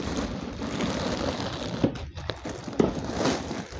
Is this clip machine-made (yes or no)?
no